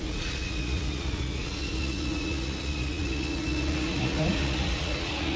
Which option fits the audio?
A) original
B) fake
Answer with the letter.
B